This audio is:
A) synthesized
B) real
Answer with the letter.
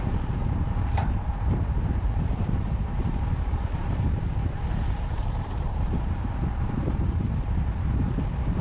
A